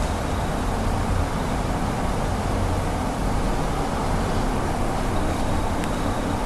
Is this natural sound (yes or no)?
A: yes